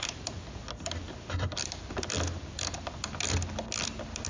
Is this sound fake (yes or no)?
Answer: no